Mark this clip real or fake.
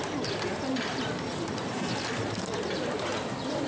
real